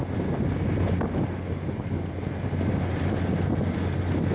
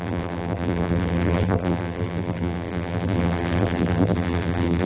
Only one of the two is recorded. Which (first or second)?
first